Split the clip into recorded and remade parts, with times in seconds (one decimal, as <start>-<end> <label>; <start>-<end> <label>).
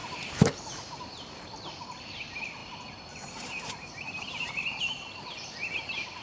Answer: 0.0-0.7 remade; 0.7-2.6 recorded; 2.6-4.8 remade; 4.8-6.2 recorded